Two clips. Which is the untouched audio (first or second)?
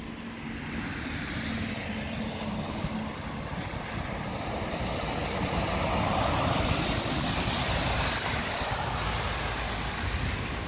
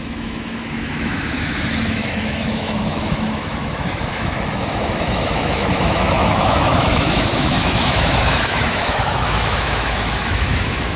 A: first